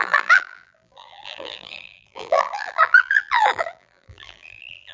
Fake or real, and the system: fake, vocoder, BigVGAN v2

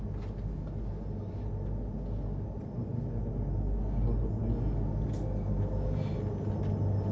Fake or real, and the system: real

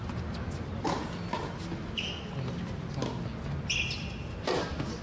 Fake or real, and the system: real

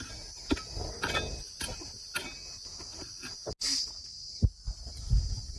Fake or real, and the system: real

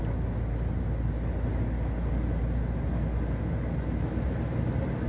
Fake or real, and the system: real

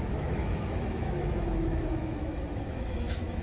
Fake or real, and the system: fake, autoencoder, DAC-VAE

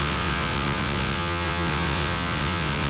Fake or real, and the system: fake, vocoder, WaveNeXt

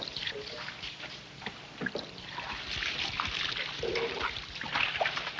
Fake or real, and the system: fake, vocoder, BigVGAN v2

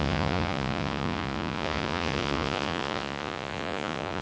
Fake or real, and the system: fake, vocoder, Vocos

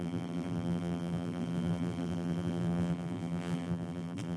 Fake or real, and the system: fake, vocoder, BigVGAN v2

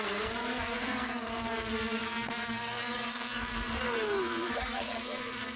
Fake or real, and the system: fake, codec, SNAC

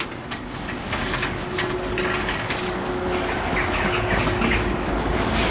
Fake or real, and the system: fake, codec, DAC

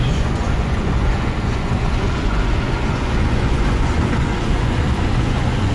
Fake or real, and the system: fake, vocoder, Vocos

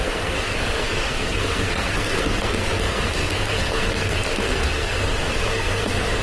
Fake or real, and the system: fake, codec, SNAC